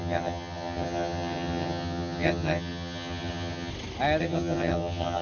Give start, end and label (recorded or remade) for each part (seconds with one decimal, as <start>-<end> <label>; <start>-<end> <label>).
0.0-3.7 remade; 3.7-4.2 recorded; 4.2-5.2 remade